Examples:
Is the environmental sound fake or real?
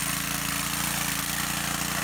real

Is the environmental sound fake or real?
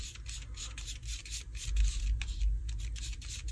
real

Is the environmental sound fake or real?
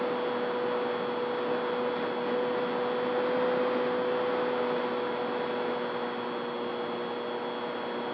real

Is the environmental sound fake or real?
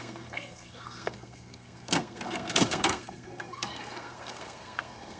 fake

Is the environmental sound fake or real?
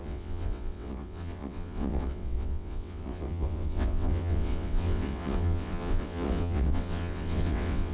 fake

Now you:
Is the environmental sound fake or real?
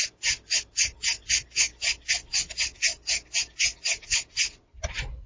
real